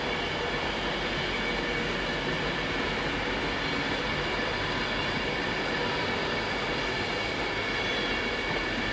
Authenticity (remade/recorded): recorded